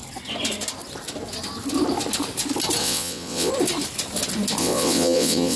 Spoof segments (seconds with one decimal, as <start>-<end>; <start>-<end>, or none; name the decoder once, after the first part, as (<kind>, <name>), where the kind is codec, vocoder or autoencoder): 2.8-3.5 (vocoder, WaveNeXt); 4.6-5.6